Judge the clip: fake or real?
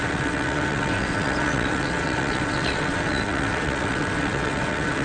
fake